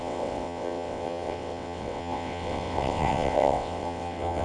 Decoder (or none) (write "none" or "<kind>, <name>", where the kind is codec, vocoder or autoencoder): vocoder, WaveNeXt